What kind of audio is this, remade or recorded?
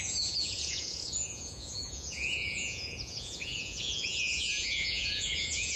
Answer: remade